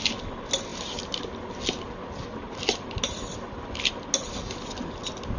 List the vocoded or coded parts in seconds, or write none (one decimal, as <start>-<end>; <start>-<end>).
none